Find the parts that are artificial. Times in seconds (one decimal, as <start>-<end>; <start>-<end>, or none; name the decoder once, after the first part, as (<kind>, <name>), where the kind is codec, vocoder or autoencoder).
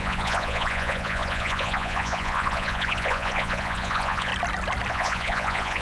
0.0-4.3 (vocoder, Vocos); 4.9-5.8